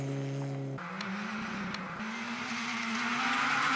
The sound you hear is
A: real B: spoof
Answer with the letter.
A